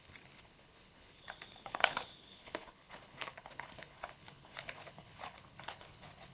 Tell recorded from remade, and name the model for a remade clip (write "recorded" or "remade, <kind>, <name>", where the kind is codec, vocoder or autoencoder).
remade, codec, HILCodec